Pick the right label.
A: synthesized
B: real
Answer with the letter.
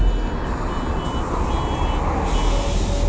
B